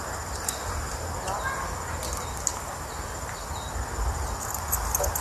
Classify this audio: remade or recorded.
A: recorded